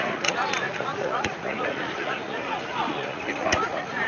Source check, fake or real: fake